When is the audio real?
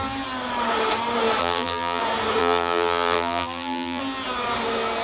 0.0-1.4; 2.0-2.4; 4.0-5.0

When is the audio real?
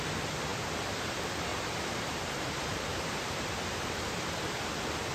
0.0-1.5; 4.6-5.1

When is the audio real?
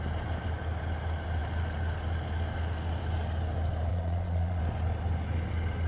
0.0-3.9; 4.6-5.9